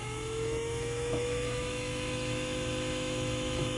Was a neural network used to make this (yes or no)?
yes